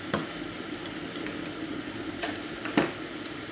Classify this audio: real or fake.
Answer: real